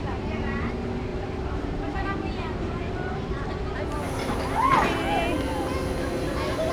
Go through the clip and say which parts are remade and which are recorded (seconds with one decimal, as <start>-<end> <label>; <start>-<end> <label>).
0.0-1.1 recorded; 1.1-3.6 remade; 3.6-6.7 recorded